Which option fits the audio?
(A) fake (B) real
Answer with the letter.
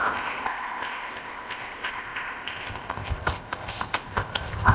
A